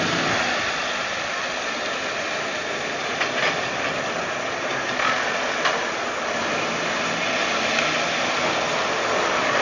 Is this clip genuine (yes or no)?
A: yes